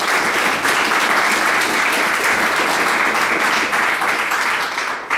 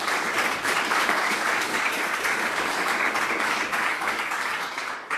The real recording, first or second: first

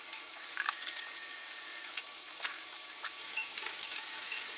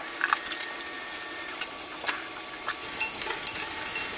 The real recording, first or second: second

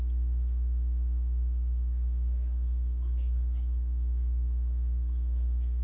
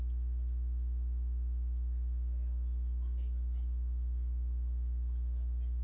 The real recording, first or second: second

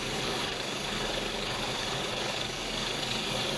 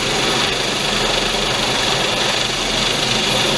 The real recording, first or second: second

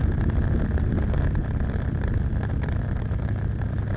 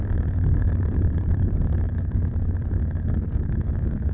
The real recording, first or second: first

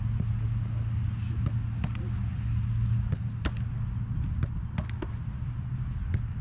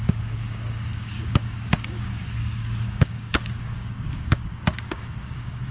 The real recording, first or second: first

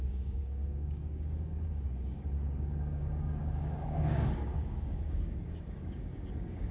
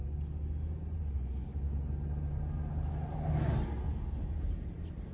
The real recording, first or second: second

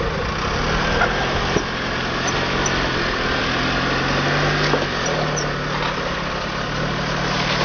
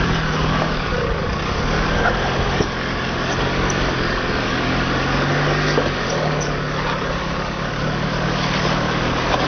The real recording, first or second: first